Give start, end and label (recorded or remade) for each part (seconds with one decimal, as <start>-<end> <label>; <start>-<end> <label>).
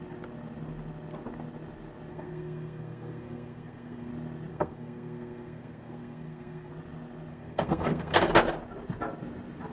0.0-2.1 recorded; 2.1-4.1 remade; 4.1-4.5 recorded; 4.5-6.7 remade; 6.7-7.3 recorded; 7.3-8.3 remade; 8.3-9.7 recorded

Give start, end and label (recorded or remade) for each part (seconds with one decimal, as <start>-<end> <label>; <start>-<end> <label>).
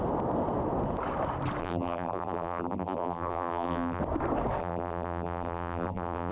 0.0-1.6 recorded; 1.6-4.0 remade; 4.0-4.6 recorded; 4.6-6.3 remade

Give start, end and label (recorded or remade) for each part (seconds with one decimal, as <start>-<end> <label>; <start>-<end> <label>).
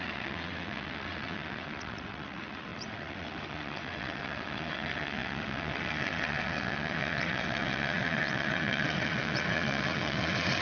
0.0-10.6 remade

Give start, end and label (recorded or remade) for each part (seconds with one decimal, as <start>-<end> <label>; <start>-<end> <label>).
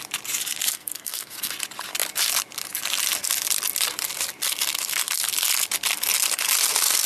0.0-0.7 recorded; 0.7-1.5 remade; 1.5-7.1 recorded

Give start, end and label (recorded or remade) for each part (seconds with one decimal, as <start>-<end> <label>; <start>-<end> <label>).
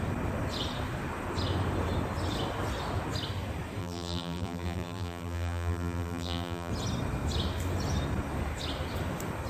0.0-3.8 recorded; 3.8-6.7 remade; 6.7-9.5 recorded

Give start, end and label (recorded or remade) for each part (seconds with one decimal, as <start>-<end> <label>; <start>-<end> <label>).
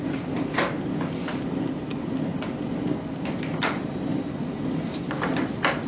0.0-5.9 recorded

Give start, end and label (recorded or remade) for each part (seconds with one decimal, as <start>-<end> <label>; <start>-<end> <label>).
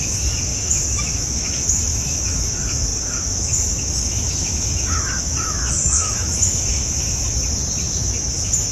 0.0-7.2 remade; 7.2-7.8 recorded; 7.8-8.7 remade